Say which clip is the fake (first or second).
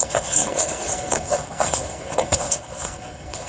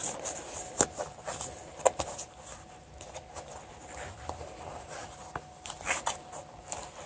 first